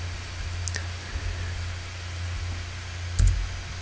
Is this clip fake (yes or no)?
no